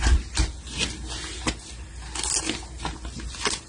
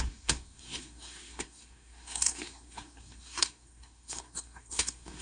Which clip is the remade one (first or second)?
second